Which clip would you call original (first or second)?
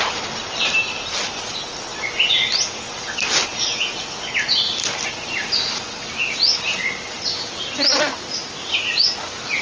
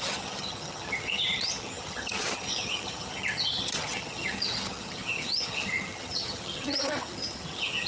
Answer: first